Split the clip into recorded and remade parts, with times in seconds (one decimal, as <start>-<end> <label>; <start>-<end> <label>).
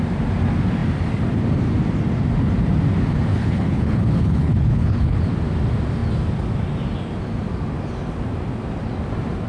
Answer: 0.0-3.3 recorded; 3.3-5.2 remade; 5.2-9.5 recorded